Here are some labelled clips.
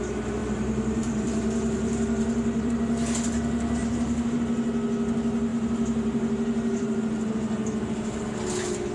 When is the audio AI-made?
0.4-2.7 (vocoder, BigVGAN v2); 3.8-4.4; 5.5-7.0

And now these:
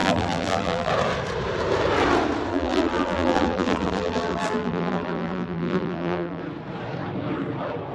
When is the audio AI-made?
0.0-0.9 (vocoder, BigVGAN v2); 2.5-6.4

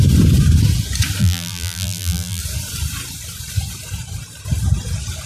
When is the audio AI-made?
1.2-2.4 (vocoder, BigVGAN v2)

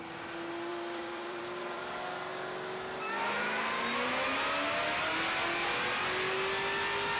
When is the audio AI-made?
0.7-1.8 (vocoder, BigVGAN v2)